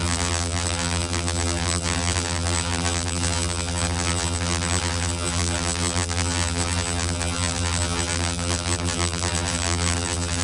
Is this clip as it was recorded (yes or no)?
no